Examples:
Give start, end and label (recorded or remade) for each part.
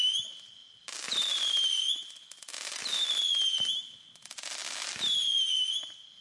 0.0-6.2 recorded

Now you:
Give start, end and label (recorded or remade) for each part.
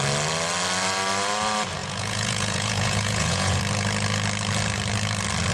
0.0-1.8 recorded; 1.8-3.6 remade; 3.6-5.5 recorded